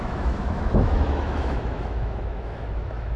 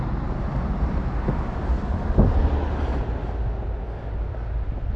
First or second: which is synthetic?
first